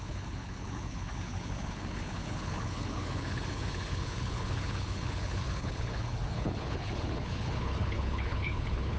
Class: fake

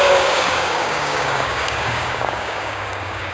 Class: fake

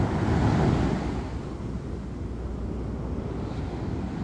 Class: real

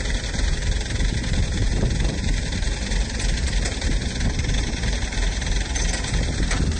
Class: fake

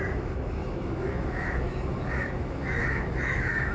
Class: fake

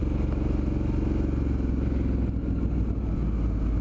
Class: real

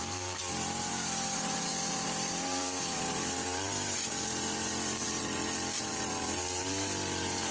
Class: fake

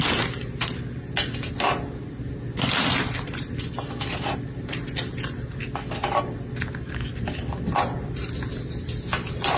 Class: real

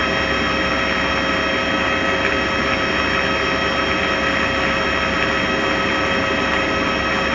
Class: real